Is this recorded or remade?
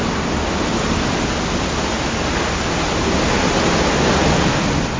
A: recorded